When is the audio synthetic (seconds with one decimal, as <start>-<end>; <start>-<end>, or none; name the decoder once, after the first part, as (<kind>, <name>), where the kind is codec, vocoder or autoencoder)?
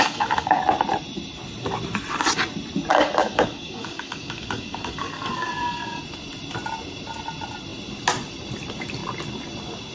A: 0.0-0.6 (codec, DAC); 2.9-6.0